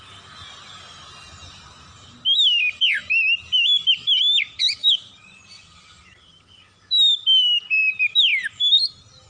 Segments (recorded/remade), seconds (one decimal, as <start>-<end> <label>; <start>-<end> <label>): 0.0-9.3 recorded

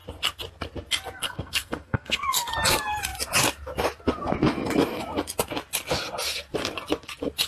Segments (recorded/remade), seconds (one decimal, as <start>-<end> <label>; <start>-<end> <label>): 0.0-1.2 recorded; 1.2-2.5 remade; 2.5-7.5 recorded

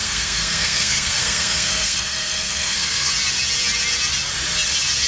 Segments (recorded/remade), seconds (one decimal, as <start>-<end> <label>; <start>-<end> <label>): 0.0-3.1 remade; 3.1-5.1 recorded

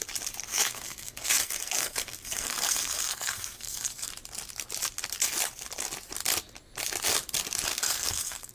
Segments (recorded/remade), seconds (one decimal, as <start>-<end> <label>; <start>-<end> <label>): 0.0-0.5 recorded; 0.5-4.1 remade; 4.1-7.7 recorded; 7.7-8.5 remade

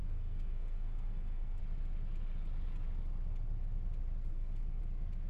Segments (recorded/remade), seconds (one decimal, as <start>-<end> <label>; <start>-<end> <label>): 0.0-1.6 remade; 1.6-4.3 recorded; 4.3-4.8 remade; 4.8-5.3 recorded

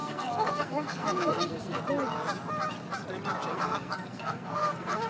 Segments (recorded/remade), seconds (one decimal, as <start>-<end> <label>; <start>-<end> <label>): 0.0-1.8 remade; 1.8-3.5 recorded; 3.5-5.1 remade